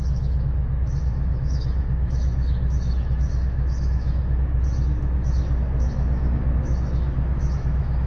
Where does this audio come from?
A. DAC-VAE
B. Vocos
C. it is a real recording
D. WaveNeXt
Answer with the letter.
A